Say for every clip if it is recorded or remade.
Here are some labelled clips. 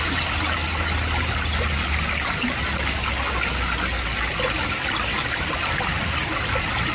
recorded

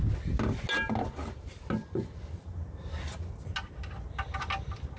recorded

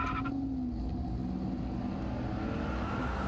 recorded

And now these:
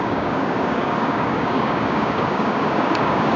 remade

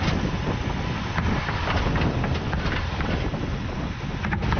recorded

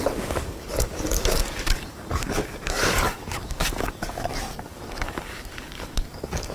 remade